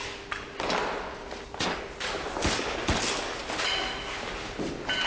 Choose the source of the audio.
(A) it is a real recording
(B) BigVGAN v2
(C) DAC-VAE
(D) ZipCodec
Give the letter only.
A